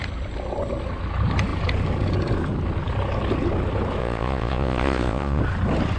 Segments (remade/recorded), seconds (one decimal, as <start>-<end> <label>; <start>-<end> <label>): 0.0-4.0 recorded; 4.0-5.4 remade; 5.4-6.0 recorded